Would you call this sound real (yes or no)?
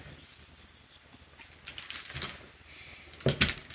yes